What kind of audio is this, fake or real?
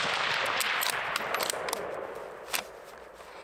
fake